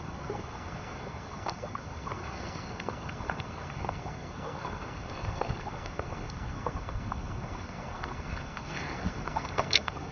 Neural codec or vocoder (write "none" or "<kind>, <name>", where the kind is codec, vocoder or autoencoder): codec, SNAC